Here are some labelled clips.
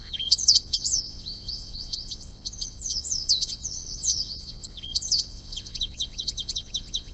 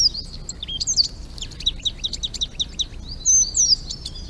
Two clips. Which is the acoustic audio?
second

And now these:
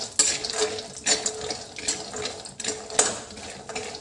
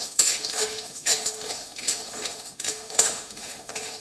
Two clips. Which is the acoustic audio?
first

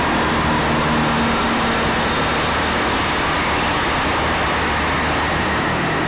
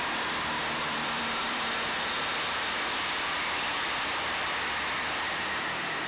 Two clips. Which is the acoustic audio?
first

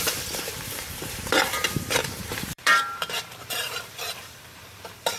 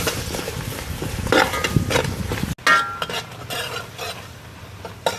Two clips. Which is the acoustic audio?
second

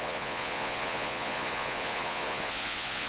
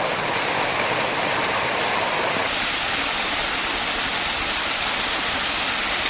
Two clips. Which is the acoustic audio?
second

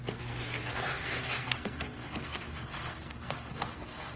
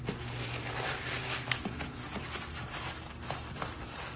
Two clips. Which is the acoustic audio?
second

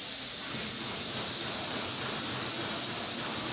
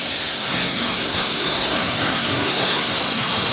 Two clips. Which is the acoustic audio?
first